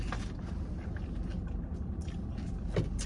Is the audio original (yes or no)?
yes